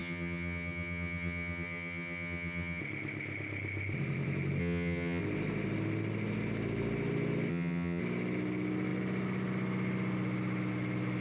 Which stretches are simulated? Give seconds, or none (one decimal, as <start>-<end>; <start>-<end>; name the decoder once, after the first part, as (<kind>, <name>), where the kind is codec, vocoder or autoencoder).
0.0-2.8 (vocoder, HiFi-GAN); 4.6-5.2; 7.5-8.0